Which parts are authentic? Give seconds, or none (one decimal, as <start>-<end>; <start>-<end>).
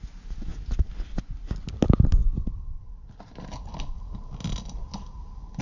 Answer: 0.0-5.6